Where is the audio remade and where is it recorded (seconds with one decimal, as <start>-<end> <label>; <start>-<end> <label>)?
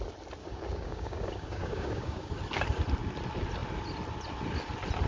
0.0-0.4 recorded; 0.4-2.3 remade; 2.3-5.1 recorded